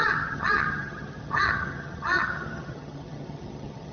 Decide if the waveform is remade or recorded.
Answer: remade